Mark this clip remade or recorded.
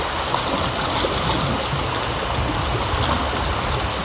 recorded